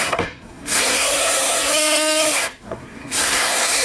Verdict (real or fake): fake